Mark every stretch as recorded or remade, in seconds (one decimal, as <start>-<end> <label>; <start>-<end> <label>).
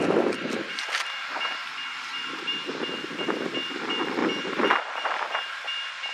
0.0-1.6 remade; 1.6-2.2 recorded; 2.2-4.2 remade; 4.2-4.9 recorded; 4.9-6.1 remade